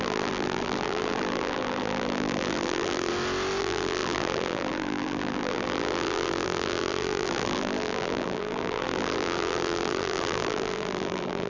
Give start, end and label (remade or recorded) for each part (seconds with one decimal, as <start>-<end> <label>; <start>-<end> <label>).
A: 0.0-3.1 remade; 3.1-3.6 recorded; 3.6-11.5 remade